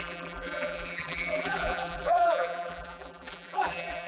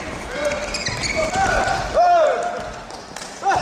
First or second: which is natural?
second